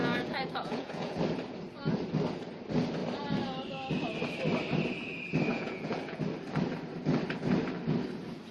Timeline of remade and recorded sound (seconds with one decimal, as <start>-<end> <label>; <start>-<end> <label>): 0.0-1.2 remade; 1.2-5.5 recorded; 5.5-6.2 remade; 6.2-8.5 recorded